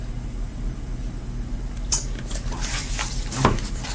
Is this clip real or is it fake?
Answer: fake